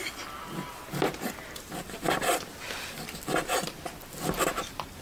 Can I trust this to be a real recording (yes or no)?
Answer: yes